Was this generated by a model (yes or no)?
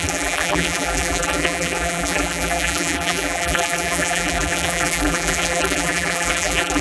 yes